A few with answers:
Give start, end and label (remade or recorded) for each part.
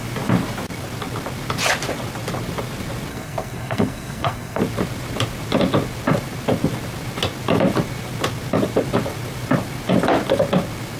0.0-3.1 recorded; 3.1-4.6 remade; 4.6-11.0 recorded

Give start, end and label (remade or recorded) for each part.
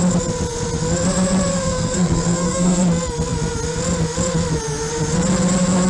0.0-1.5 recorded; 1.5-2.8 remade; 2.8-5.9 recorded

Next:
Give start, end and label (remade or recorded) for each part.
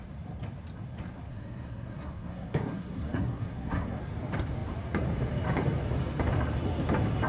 0.0-1.3 recorded; 1.3-4.0 remade; 4.0-7.3 recorded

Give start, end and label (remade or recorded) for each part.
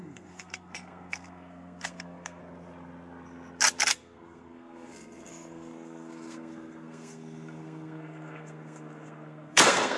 0.0-2.4 remade; 2.4-3.9 recorded; 3.9-10.0 remade